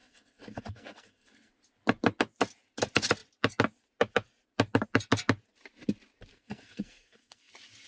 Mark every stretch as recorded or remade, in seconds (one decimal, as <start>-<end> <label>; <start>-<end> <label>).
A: 0.0-1.5 remade; 1.5-6.3 recorded; 6.3-7.5 remade; 7.5-7.9 recorded

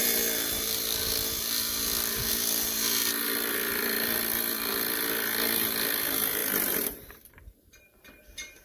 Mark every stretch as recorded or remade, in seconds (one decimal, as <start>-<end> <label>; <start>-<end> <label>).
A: 0.0-8.6 remade